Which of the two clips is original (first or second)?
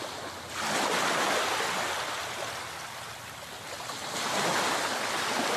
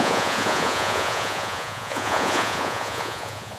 first